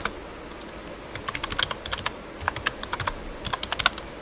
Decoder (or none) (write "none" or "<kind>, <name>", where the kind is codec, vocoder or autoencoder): none